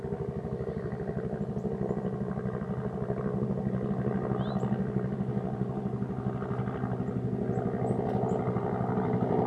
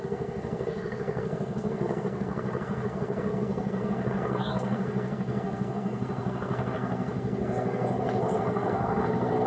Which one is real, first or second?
first